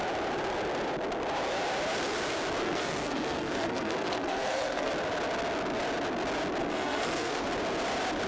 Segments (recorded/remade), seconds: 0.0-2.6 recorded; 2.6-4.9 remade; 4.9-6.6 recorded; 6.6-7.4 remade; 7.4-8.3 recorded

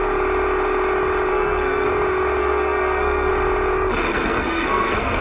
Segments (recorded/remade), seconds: 0.0-1.3 recorded; 1.3-1.9 remade; 1.9-2.4 recorded; 2.4-3.3 remade; 3.3-4.1 recorded; 4.1-5.2 remade

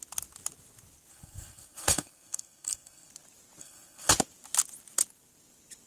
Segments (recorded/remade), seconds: 0.0-1.1 recorded; 1.1-3.1 remade; 3.1-3.6 recorded; 3.6-4.1 remade; 4.1-5.9 recorded

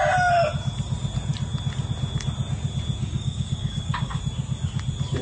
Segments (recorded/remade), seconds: 0.0-3.0 recorded; 3.0-4.2 remade; 4.2-5.2 recorded

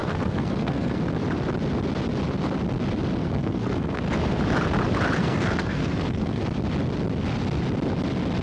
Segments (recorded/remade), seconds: 0.0-1.0 remade; 1.0-3.2 recorded; 3.2-4.0 remade; 4.0-5.2 recorded; 5.2-6.4 remade; 6.4-8.4 recorded